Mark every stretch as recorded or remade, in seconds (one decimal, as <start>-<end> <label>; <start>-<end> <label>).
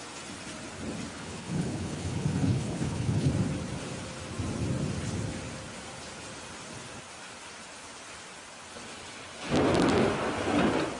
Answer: 0.0-1.1 recorded; 1.1-3.3 remade; 3.3-11.0 recorded